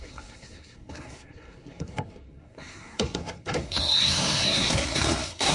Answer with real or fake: fake